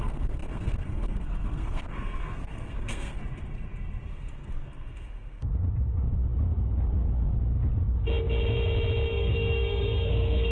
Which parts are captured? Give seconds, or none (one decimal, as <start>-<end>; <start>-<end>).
3.2-4.1; 5.5-9.1